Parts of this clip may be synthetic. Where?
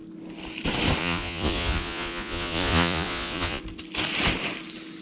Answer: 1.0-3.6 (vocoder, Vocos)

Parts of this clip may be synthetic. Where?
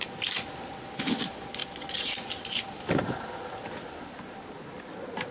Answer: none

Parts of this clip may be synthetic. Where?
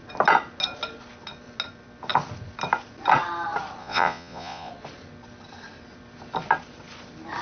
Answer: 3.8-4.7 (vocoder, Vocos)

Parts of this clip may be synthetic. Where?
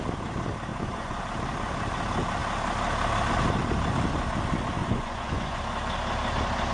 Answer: 0.7-1.2 (vocoder, Vocos); 4.8-5.6